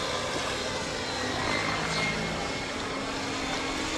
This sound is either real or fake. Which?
real